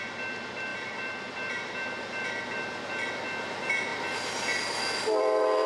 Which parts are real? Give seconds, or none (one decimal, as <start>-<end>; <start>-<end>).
0.0-0.7; 3.1-3.9